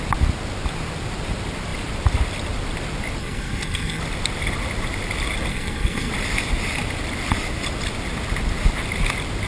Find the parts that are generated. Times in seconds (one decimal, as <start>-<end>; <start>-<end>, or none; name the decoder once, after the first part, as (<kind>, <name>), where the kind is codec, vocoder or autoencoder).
3.2-4.0 (codec, SNAC); 5.5-6.1